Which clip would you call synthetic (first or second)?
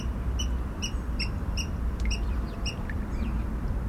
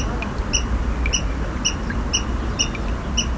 first